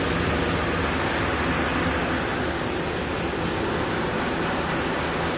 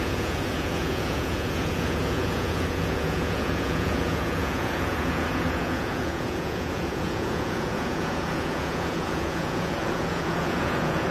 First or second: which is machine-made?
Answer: second